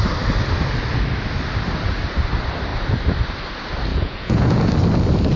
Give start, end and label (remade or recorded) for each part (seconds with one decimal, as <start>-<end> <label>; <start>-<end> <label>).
0.0-3.9 recorded; 3.9-4.7 remade; 4.7-5.4 recorded